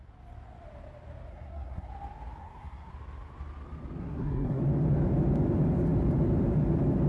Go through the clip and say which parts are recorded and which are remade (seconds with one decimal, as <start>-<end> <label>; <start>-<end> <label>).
0.0-1.3 recorded; 1.3-1.9 remade; 1.9-2.4 recorded; 2.4-2.9 remade; 2.9-4.0 recorded; 4.0-4.6 remade; 4.6-7.1 recorded